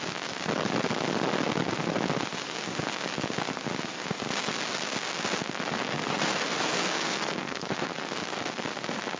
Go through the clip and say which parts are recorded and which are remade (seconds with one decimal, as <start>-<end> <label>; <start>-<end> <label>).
0.0-6.7 recorded; 6.7-7.7 remade; 7.7-9.2 recorded